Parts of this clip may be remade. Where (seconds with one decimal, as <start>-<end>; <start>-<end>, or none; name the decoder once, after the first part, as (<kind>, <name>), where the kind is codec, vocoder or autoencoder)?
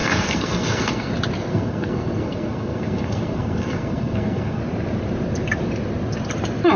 0.0-1.1 (codec, SNAC); 1.5-4.6